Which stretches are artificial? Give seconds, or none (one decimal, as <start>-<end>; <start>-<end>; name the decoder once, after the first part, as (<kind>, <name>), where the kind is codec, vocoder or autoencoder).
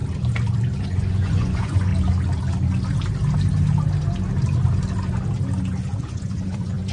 0.8-1.9 (vocoder, Vocos); 6.0-6.9